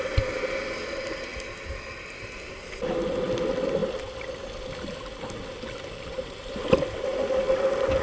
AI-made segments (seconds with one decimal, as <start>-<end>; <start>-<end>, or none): none